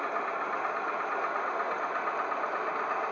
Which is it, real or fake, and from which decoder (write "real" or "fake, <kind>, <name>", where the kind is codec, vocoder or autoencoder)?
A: real